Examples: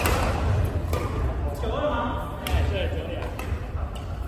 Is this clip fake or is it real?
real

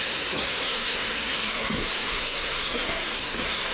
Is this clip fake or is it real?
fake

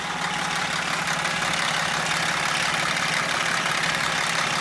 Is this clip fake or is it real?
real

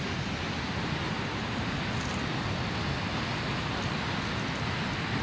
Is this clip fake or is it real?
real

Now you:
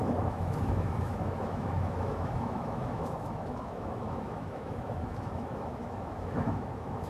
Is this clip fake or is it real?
fake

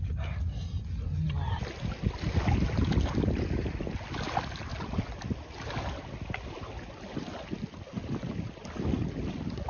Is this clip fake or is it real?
real